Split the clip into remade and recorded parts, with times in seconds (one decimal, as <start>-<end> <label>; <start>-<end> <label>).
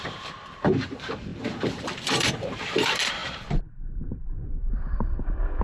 0.0-5.6 remade